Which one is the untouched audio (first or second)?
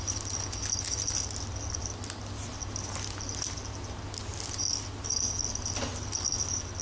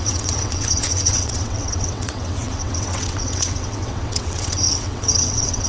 first